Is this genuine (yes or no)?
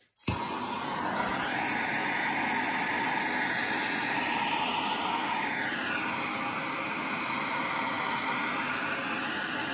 yes